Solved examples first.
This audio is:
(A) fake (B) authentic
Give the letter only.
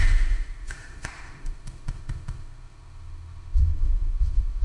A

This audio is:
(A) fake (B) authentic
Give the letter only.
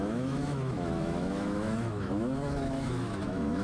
A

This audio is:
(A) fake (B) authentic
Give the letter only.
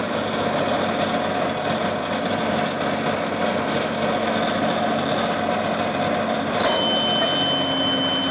B